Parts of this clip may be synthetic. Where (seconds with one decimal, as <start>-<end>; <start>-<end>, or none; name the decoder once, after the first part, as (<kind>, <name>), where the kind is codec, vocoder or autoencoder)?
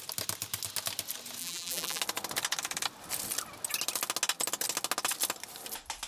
1.4-2.0 (vocoder, BigVGAN v2)